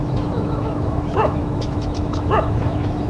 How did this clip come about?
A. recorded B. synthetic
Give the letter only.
B